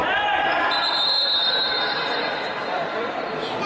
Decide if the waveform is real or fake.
fake